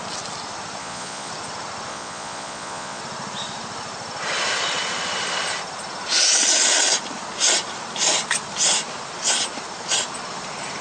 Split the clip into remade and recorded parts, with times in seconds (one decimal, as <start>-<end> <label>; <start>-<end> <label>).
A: 0.0-0.8 recorded; 0.8-1.3 remade; 1.3-1.9 recorded; 1.9-3.0 remade; 3.0-10.8 recorded